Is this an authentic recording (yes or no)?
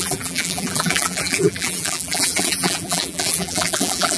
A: no